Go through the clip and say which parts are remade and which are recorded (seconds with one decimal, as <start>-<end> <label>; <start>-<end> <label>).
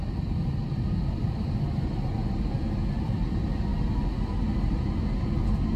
0.0-5.8 recorded